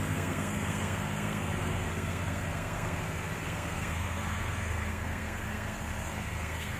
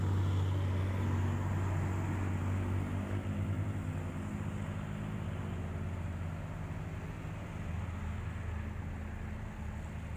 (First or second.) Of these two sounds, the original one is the second